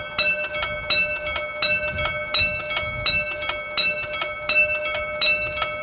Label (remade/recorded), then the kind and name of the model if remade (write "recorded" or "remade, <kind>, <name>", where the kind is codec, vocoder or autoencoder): recorded